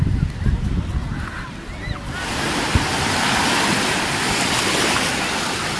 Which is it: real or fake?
real